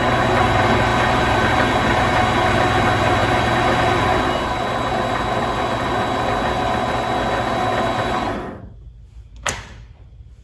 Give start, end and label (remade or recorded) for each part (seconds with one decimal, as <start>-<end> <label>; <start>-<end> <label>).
0.0-10.4 recorded